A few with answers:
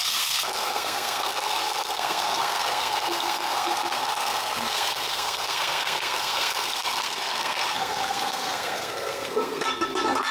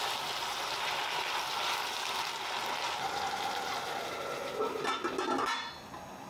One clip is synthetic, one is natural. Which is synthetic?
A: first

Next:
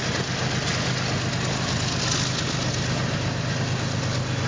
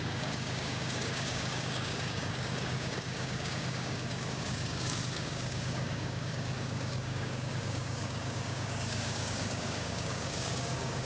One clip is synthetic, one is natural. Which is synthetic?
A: second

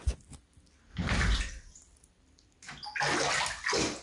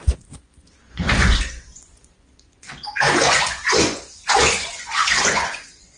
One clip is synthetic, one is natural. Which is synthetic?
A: second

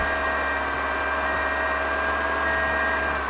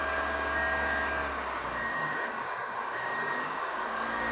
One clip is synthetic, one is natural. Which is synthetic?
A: second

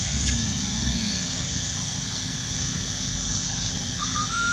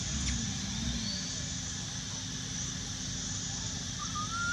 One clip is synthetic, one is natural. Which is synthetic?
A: first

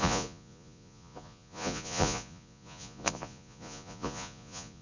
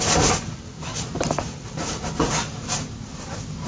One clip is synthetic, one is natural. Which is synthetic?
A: first